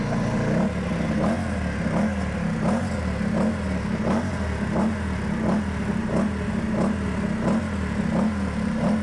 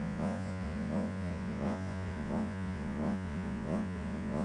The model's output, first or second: second